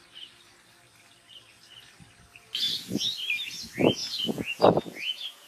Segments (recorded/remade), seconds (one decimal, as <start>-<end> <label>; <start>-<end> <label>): 0.0-4.0 recorded; 4.0-5.5 remade